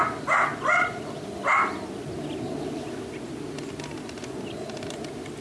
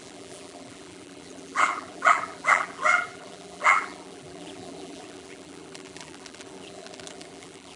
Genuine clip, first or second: first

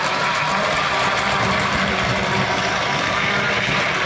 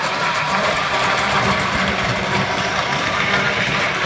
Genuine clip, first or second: first